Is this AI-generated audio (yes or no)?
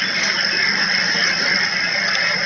yes